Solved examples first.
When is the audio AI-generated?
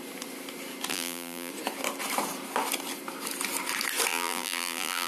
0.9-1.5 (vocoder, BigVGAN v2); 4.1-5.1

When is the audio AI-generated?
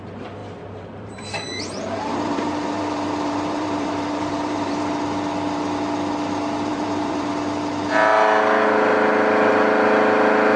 0.4-4.9 (vocoder, BigVGAN v2); 6.7-7.3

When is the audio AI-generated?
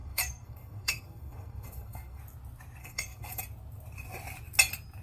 0.0-2.2 (codec, SNAC); 2.8-3.4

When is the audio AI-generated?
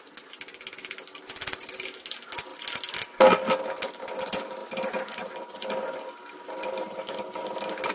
none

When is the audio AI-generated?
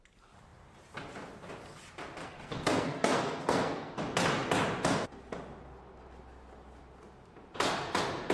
2.2-4.0 (codec, SNAC)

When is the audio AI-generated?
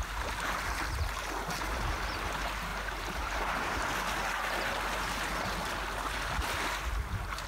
2.7-3.7 (vocoder, BigVGAN v2)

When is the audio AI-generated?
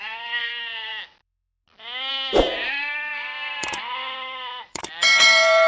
0.0-0.9 (vocoder, BigVGAN v2); 2.1-5.7